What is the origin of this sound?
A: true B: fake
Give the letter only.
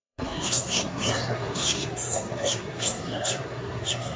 B